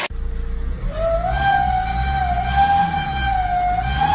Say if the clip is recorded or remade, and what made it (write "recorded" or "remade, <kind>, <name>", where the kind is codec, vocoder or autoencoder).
recorded